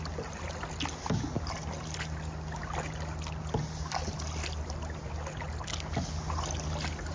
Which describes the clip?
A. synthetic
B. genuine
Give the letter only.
B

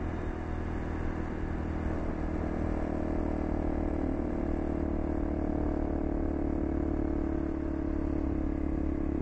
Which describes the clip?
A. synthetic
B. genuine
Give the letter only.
B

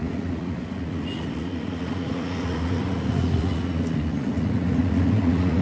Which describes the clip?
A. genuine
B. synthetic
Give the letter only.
B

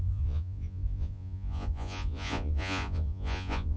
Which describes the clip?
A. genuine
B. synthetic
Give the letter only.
B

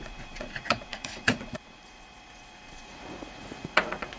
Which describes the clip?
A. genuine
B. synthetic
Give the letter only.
B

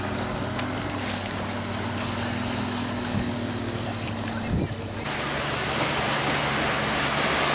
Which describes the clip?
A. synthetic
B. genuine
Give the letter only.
B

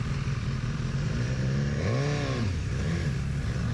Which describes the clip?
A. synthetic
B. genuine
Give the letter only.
B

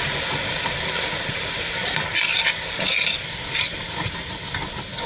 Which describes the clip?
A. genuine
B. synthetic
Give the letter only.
A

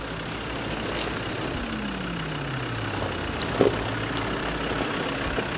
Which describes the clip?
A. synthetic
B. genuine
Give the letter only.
B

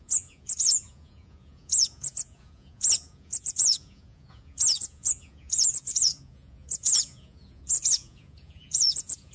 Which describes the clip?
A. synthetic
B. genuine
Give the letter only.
A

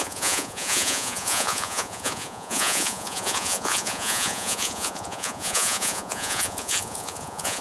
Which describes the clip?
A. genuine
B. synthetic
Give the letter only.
B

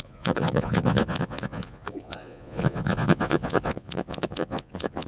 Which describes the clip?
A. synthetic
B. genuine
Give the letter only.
A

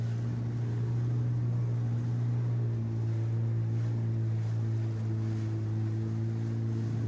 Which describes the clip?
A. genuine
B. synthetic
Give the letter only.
A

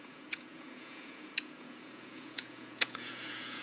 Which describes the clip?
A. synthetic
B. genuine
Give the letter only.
A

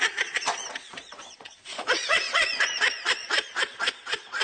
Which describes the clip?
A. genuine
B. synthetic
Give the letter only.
B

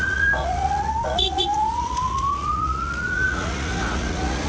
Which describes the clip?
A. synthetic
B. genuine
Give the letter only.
A